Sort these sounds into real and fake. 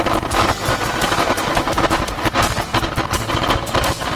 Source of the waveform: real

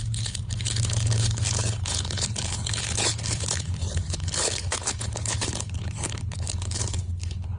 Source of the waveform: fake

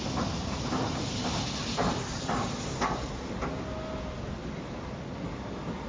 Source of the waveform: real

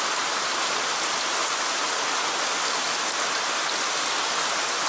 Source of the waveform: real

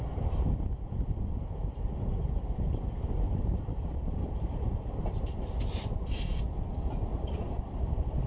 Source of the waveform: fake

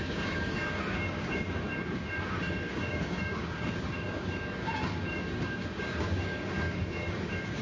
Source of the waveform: fake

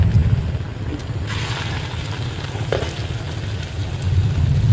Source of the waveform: real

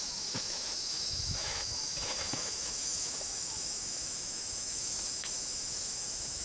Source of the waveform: fake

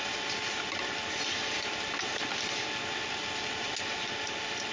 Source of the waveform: real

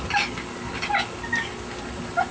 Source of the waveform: real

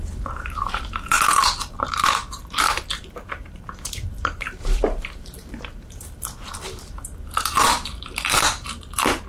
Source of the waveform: fake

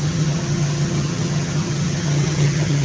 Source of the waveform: fake